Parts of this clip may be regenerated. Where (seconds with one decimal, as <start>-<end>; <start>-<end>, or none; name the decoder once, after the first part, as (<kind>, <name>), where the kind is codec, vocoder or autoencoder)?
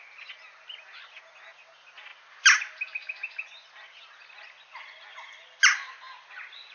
none